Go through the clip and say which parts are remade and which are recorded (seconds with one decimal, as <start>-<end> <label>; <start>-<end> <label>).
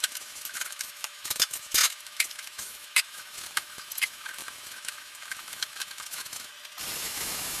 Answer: 0.0-6.5 remade; 6.5-7.0 recorded; 7.0-7.6 remade